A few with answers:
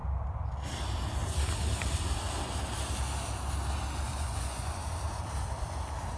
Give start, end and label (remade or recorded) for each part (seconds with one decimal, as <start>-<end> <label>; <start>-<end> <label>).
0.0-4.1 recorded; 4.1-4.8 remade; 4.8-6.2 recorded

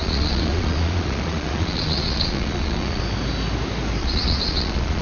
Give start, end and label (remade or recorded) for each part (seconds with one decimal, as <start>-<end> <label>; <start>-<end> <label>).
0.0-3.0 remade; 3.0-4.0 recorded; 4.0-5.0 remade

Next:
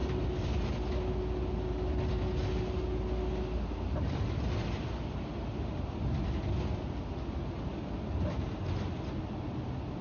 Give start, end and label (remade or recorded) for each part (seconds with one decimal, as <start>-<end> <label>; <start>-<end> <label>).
0.0-10.0 recorded